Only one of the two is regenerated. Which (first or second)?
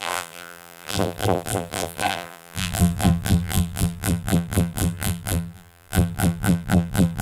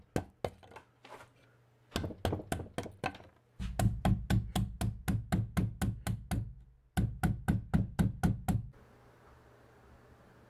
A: first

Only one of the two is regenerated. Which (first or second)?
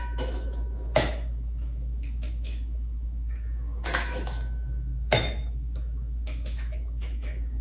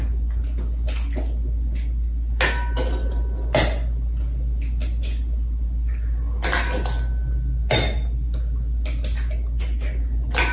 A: first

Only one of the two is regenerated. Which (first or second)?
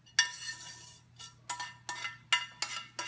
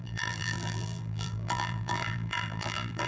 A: second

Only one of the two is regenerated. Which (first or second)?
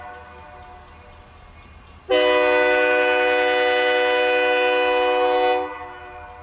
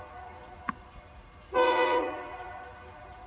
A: second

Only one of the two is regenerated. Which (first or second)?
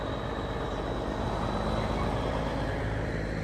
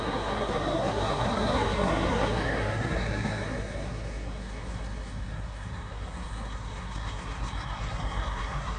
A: second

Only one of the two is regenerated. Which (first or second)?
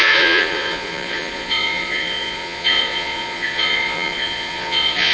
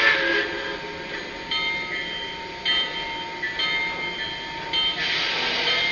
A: first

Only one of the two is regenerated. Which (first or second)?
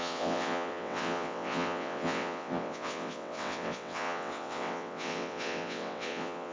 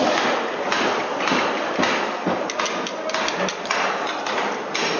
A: first